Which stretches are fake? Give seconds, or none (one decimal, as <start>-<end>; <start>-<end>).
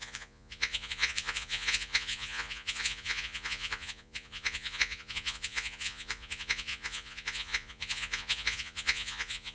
0.0-9.5